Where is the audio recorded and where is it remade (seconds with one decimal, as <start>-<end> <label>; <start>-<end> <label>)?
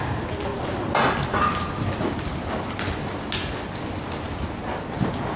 0.0-5.4 recorded